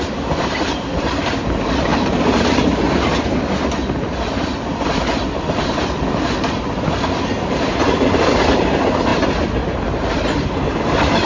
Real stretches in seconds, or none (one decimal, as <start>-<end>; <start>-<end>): 0.0-11.3